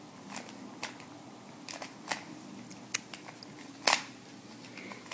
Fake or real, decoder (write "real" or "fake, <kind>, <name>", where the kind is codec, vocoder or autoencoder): real